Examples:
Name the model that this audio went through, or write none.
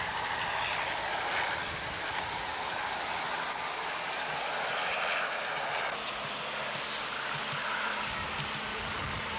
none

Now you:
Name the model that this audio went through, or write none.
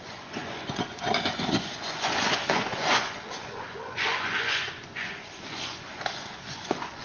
vocoder, Vocos